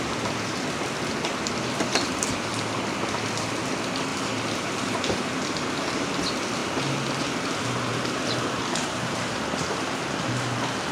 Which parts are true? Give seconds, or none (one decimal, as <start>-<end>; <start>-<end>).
0.0-1.9; 2.5-4.1; 6.1-7.9; 9.4-10.9